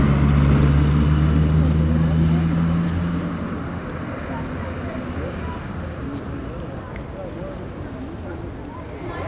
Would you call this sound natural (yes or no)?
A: yes